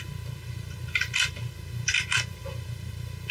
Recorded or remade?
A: recorded